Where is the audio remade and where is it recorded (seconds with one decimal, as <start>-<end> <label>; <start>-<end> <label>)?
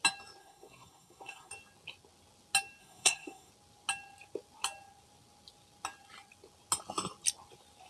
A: 0.0-0.4 recorded; 0.4-1.5 remade; 1.5-2.8 recorded; 2.8-3.5 remade; 3.5-7.9 recorded